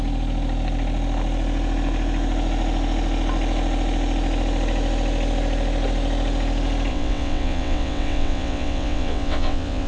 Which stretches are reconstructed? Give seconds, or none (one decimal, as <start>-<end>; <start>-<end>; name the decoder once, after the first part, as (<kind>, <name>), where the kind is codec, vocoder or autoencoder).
6.9-9.9 (vocoder, WaveNeXt)